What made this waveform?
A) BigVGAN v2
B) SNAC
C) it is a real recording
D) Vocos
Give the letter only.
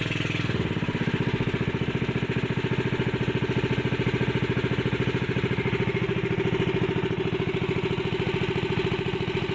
C